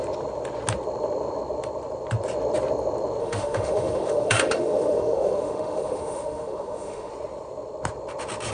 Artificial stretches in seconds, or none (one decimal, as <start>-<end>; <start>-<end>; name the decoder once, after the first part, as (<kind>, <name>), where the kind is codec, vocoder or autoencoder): 3.2-7.1 (autoencoder, DAC-VAE)